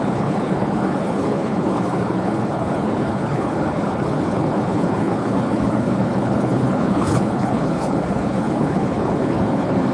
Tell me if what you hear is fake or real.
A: fake